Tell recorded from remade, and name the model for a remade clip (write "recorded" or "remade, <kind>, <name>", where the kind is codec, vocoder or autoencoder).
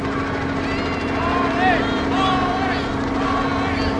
recorded